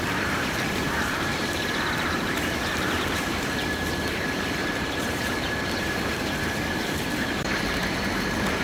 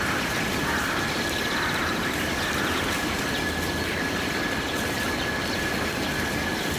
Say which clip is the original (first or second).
second